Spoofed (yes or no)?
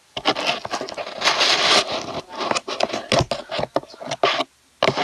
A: no